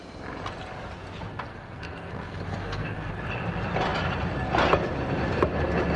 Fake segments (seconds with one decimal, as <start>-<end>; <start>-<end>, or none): 1.5-3.1